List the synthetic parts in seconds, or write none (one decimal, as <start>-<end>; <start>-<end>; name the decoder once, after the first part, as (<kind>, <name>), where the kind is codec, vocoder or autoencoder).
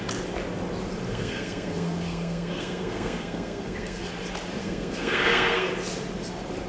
1.1-4.1 (codec, SNAC); 4.6-5.7